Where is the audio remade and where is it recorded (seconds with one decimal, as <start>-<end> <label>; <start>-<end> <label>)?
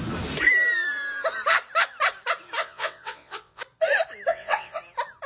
0.0-2.6 recorded; 2.6-3.6 remade; 3.6-4.3 recorded; 4.3-4.8 remade; 4.8-5.3 recorded